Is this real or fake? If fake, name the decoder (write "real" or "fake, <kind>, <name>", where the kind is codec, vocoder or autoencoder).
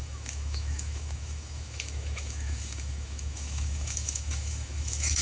fake, autoencoder, DAC-VAE